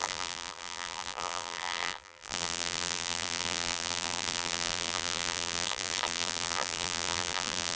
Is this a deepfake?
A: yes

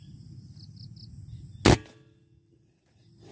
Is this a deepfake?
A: no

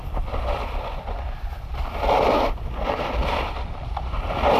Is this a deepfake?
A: yes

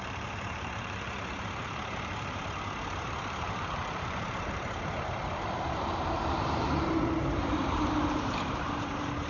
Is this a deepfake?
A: yes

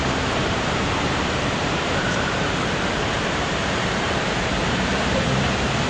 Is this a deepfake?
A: yes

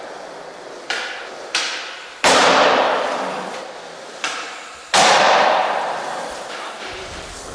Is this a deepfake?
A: yes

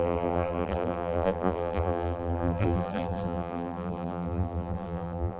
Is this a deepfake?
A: yes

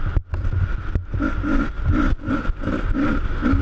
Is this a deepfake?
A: no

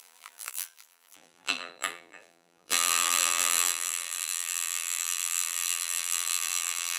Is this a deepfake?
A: yes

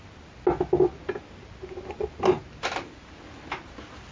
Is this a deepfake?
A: no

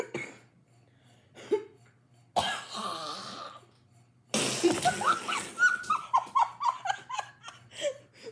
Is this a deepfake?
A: no